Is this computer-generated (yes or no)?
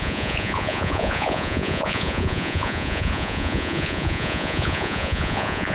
yes